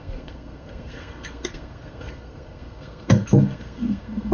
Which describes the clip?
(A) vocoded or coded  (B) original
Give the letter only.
A